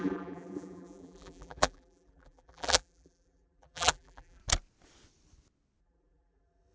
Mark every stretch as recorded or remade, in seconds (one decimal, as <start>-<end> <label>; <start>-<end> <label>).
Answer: 0.0-4.4 remade; 4.4-5.8 recorded; 5.8-6.7 remade